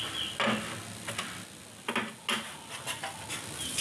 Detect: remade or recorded recorded